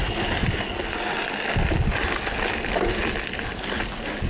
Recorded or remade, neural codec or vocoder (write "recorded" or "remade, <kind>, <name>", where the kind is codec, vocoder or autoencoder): recorded